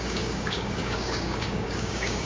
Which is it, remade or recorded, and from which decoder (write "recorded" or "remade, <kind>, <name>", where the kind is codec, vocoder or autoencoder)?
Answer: remade, codec, DAC